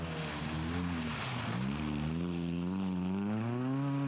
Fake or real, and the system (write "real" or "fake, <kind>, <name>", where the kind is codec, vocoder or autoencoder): real